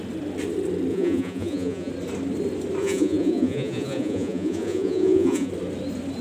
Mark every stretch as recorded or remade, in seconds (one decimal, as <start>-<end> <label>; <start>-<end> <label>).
0.0-0.9 recorded; 0.9-1.9 remade; 1.9-2.8 recorded; 2.8-5.5 remade; 5.5-6.2 recorded